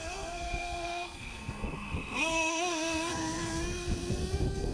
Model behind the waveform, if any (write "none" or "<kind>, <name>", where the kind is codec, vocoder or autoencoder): codec, SNAC